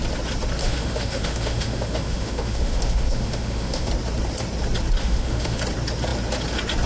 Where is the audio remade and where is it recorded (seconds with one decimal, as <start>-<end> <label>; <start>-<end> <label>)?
0.0-0.6 recorded; 0.6-3.9 remade; 3.9-5.0 recorded; 5.0-5.6 remade; 5.6-6.9 recorded